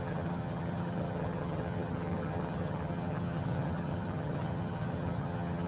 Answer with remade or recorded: remade